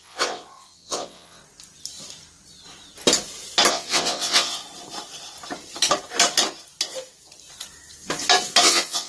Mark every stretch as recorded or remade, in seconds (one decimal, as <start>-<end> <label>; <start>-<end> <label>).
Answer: 0.0-1.4 remade; 1.4-3.7 recorded; 3.7-4.6 remade; 4.6-8.6 recorded; 8.6-9.1 remade